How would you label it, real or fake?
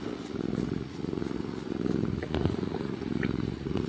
fake